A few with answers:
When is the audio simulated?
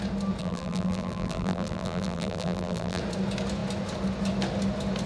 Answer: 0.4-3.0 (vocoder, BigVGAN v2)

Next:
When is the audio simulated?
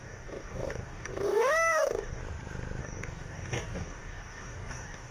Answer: 0.0-2.2 (codec, DAC); 2.8-5.1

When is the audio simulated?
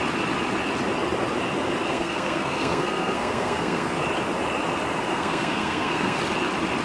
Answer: 1.9-4.0 (codec, SNAC); 5.1-6.2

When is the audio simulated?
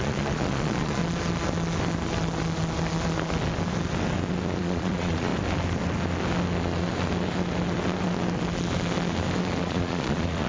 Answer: 0.0-1.0 (vocoder, Vocos); 4.6-5.3; 9.6-10.5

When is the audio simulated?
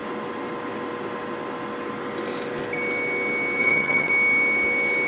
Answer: 3.6-4.1 (vocoder, HiFi-GAN)